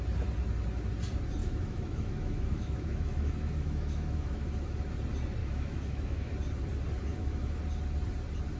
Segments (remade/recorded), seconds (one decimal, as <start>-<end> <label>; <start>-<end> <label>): 0.0-1.4 recorded; 1.4-4.9 remade; 4.9-5.4 recorded; 5.4-6.3 remade; 6.3-7.1 recorded; 7.1-7.6 remade; 7.6-8.6 recorded